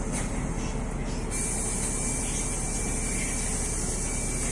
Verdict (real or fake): real